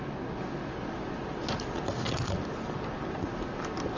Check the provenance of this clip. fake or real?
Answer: real